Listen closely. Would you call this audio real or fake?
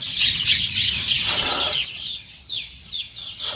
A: fake